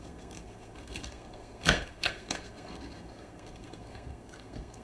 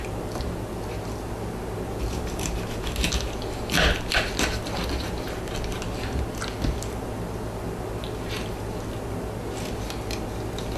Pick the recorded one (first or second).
second